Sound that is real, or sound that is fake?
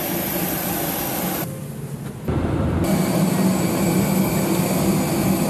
real